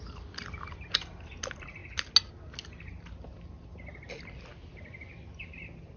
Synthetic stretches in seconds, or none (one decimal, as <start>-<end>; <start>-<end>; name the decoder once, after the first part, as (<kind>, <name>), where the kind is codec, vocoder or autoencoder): none